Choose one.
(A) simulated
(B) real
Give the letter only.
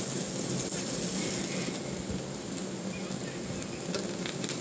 B